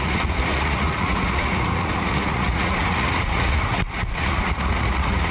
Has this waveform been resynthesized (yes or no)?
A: yes